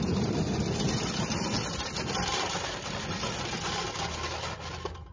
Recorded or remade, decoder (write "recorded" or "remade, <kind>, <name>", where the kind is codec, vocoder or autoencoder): recorded